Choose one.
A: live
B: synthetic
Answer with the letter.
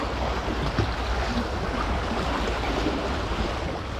A